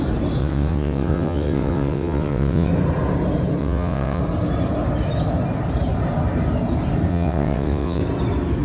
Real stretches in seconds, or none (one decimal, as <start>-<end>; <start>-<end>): 0.0-0.4; 2.7-3.6; 4.2-7.1; 8.0-8.6